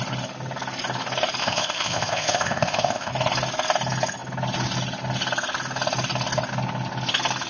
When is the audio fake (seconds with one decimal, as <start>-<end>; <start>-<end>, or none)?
1.4-3.1